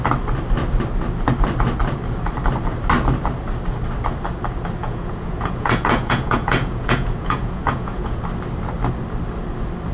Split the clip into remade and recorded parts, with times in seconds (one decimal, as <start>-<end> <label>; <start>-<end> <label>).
0.0-4.8 recorded; 4.8-8.2 remade; 8.2-9.9 recorded